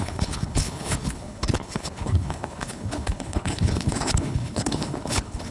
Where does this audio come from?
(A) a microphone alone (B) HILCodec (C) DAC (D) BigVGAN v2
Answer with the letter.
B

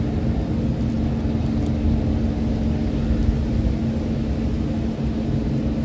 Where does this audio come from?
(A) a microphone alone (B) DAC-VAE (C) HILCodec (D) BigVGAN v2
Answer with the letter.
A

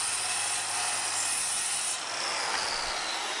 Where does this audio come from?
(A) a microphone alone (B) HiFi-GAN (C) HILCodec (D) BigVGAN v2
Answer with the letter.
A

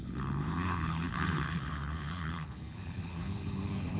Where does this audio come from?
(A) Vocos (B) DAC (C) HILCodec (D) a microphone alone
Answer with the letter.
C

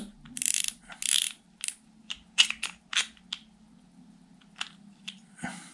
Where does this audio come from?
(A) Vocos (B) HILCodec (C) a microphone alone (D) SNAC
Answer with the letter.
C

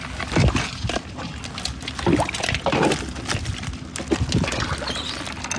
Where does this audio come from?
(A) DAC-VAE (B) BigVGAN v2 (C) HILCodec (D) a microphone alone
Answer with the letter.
D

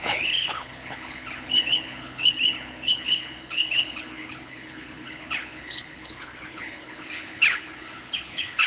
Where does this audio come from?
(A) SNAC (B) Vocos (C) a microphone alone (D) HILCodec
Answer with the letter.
D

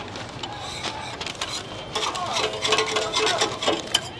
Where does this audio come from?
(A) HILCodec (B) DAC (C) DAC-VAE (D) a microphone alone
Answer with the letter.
D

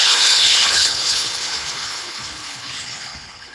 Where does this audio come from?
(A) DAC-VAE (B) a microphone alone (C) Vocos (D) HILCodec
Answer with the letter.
D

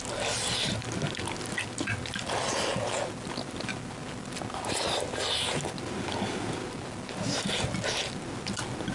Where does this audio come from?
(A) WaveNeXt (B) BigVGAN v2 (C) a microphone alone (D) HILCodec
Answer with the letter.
C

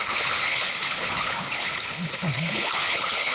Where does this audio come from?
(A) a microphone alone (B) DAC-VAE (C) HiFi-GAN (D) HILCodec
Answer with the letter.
D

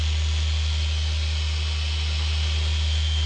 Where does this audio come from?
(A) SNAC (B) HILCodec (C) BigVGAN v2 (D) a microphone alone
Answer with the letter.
D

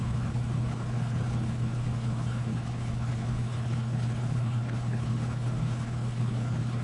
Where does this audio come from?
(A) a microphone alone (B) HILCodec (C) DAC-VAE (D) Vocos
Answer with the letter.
B